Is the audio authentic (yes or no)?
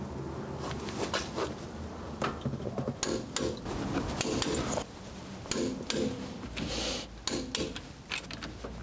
yes